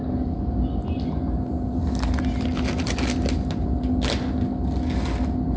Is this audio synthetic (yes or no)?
no